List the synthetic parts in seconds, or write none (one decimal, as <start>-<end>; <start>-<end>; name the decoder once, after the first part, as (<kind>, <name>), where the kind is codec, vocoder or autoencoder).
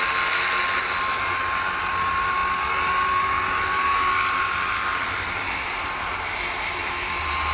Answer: none